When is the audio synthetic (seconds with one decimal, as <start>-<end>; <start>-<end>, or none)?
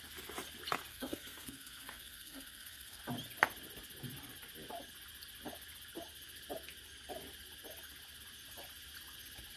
0.9-3.0